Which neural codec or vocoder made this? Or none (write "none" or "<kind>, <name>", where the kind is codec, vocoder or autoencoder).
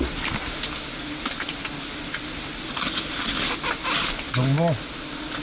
none